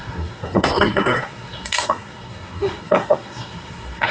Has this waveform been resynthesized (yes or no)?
yes